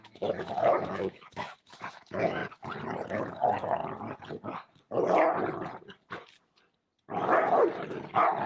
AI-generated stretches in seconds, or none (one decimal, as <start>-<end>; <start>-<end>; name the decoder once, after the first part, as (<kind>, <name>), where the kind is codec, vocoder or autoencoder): 0.0-2.4 (autoencoder, DAC-VAE); 3.1-3.8